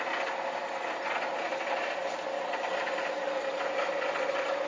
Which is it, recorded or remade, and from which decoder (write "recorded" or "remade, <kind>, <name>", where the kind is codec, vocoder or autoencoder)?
recorded